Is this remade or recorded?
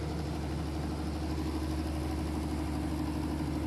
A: recorded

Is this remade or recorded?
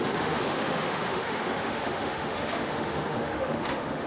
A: remade